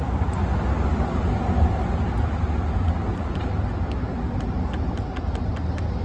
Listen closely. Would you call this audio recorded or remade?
recorded